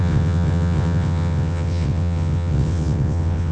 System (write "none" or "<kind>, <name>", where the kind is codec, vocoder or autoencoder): vocoder, WaveNeXt